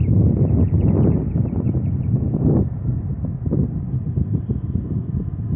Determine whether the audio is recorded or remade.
recorded